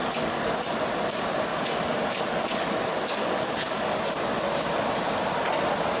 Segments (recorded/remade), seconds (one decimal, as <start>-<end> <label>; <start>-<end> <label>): 0.0-0.5 remade; 0.5-1.5 recorded; 1.5-2.2 remade; 2.2-2.9 recorded; 2.9-4.0 remade; 4.0-6.0 recorded